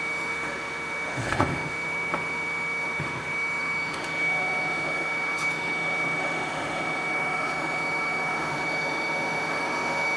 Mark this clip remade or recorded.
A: remade